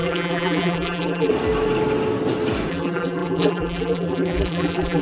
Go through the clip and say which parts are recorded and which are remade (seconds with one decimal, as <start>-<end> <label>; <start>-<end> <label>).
0.0-1.3 remade; 1.3-2.7 recorded; 2.7-5.0 remade